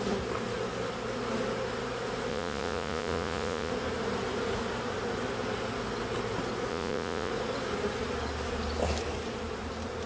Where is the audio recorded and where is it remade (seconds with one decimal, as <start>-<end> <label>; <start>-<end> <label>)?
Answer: 0.0-2.3 recorded; 2.3-3.7 remade; 3.7-6.7 recorded; 6.7-7.3 remade; 7.3-10.1 recorded